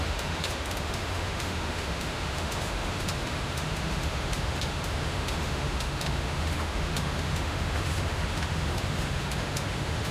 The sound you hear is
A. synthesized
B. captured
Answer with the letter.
A